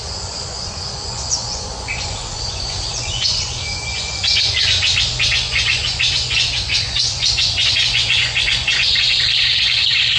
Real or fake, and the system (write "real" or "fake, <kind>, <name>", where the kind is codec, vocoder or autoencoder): fake, vocoder, Vocos